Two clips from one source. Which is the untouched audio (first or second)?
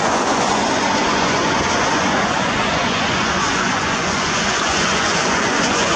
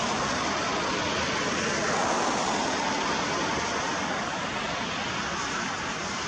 second